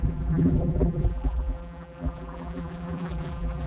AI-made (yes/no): yes